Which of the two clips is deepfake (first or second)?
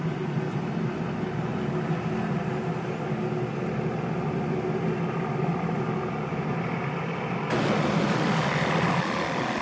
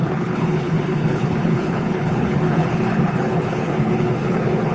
second